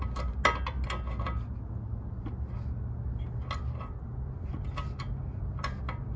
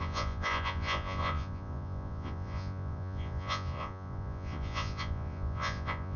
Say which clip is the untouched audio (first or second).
first